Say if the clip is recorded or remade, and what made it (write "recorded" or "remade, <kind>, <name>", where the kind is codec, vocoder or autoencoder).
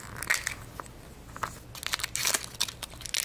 recorded